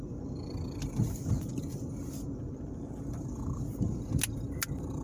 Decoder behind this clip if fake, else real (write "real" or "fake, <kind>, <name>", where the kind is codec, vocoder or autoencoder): real